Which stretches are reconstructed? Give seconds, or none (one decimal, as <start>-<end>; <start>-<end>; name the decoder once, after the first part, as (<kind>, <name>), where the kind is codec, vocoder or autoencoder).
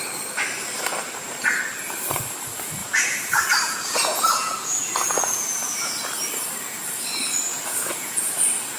2.8-6.1 (vocoder, Vocos); 7.5-8.3